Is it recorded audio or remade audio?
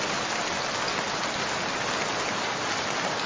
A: recorded